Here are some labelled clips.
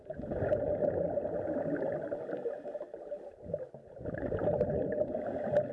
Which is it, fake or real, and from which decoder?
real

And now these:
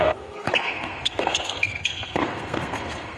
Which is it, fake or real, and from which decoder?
fake, codec, SNAC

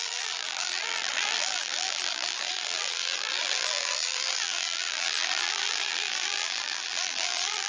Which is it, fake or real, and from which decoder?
fake, vocoder, BigVGAN v2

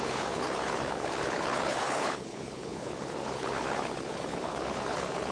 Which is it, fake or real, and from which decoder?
fake, codec, HILCodec